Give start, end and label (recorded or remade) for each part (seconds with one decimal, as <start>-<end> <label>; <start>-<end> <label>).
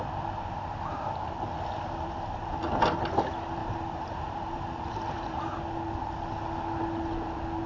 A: 0.0-3.6 recorded; 3.6-5.7 remade; 5.7-7.7 recorded